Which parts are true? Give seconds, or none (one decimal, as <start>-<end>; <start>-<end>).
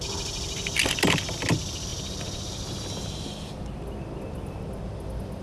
0.0-5.4